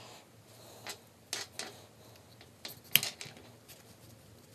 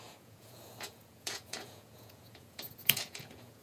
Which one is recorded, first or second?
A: first